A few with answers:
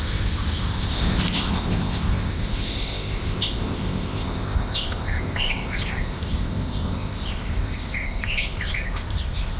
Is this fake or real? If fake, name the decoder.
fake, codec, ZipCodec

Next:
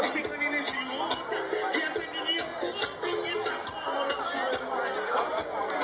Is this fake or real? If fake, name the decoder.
real